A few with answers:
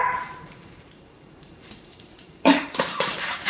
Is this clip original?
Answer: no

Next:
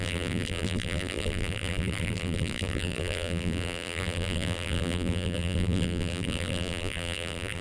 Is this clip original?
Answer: no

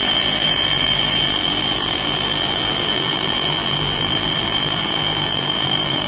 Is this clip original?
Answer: no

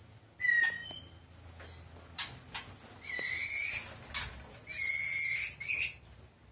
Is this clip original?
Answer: yes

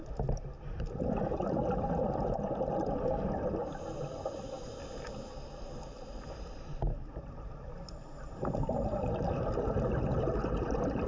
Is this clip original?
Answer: yes